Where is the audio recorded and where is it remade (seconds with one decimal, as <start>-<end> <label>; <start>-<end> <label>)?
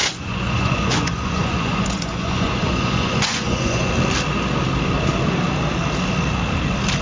0.0-3.9 remade; 3.9-7.0 recorded